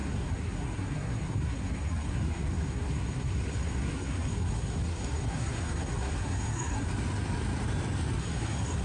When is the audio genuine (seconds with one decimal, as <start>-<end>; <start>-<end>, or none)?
6.9-8.2